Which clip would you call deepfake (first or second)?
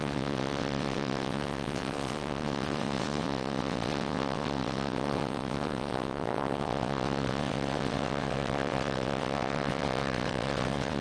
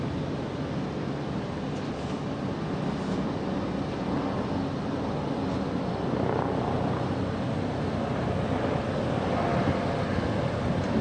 first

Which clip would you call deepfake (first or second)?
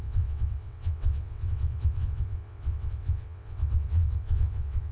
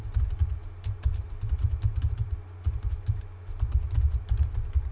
first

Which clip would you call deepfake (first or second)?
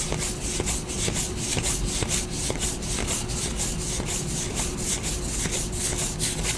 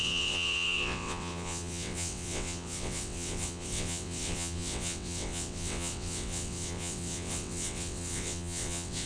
second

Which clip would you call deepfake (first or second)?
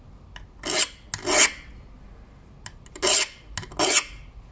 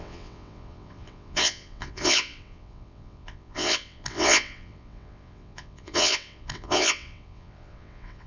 second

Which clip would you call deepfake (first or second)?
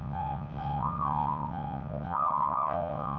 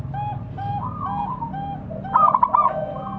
first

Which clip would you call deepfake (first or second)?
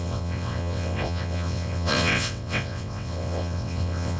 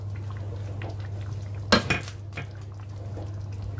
first